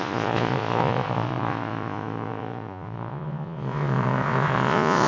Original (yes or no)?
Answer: no